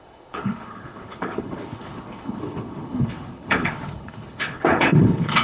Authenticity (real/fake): fake